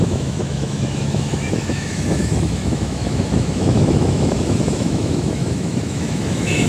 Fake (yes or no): yes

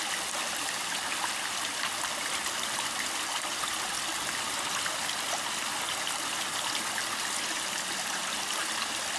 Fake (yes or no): no